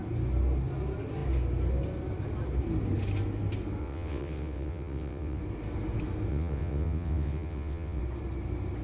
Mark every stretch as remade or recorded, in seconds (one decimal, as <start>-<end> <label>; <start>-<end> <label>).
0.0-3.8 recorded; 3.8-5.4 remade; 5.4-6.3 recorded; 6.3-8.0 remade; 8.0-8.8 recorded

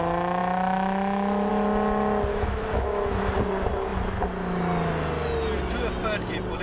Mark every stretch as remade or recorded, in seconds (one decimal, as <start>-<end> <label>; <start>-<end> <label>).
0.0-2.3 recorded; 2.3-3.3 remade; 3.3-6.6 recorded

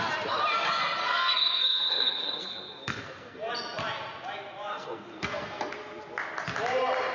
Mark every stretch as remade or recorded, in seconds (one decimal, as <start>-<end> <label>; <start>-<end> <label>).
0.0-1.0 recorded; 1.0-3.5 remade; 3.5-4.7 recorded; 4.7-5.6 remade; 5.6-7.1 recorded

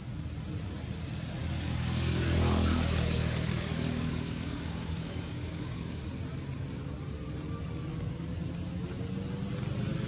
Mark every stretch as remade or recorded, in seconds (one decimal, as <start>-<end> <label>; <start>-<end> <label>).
0.0-1.4 recorded; 1.4-6.0 remade; 6.0-10.1 recorded